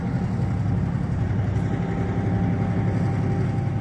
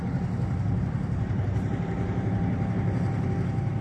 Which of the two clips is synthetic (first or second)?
second